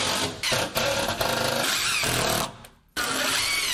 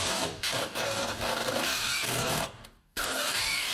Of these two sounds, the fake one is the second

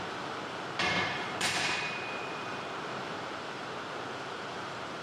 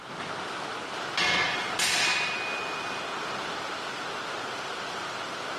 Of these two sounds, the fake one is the first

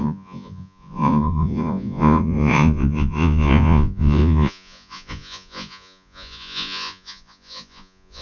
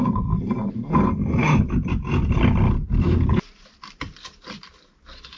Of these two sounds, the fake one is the first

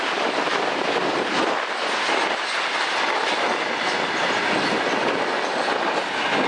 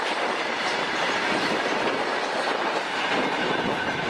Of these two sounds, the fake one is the second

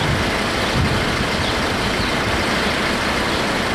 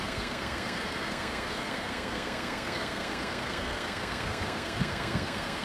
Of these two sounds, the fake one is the second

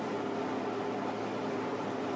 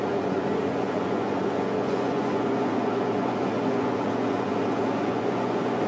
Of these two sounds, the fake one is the second